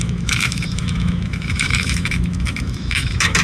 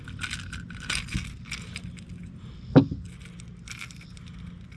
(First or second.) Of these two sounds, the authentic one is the second